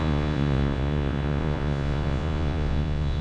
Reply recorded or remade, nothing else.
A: remade